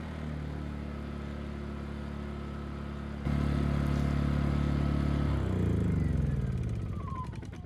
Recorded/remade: recorded